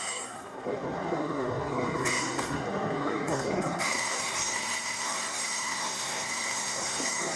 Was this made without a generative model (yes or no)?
no